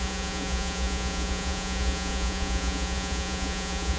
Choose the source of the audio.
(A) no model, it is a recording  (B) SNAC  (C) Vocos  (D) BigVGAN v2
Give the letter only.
C